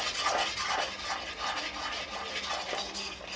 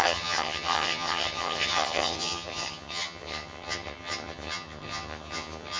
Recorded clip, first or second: first